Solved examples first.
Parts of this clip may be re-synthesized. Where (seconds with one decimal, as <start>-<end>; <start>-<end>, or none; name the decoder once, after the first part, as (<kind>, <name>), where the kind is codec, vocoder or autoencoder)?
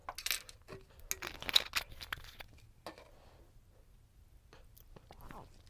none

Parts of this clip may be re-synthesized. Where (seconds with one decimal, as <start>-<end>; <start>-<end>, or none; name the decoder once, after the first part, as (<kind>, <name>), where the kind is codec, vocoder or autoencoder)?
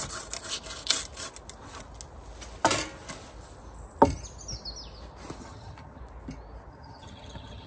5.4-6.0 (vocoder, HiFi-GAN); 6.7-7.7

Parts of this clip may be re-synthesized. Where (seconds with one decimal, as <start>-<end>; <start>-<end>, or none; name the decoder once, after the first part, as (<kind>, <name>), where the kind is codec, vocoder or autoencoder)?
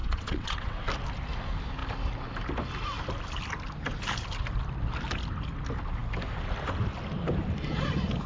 0.0-0.9 (vocoder, WaveNeXt)